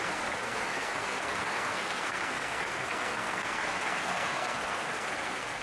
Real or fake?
fake